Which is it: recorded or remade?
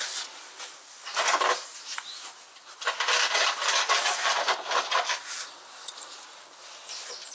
recorded